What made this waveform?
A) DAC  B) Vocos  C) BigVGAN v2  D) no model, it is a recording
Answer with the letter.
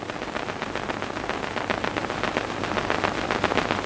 D